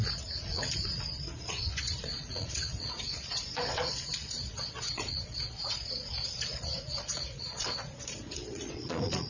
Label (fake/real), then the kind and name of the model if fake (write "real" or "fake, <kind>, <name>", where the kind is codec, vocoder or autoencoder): fake, vocoder, Vocos